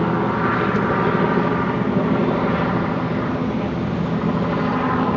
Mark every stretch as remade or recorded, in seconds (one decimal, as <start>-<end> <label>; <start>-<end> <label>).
0.0-0.5 recorded; 0.5-3.6 remade; 3.6-5.2 recorded